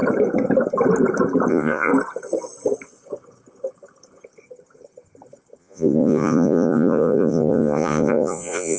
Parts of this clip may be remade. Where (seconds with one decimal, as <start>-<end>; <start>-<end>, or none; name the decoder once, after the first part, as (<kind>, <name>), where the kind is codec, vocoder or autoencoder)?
1.5-1.9 (vocoder, Vocos); 5.6-8.8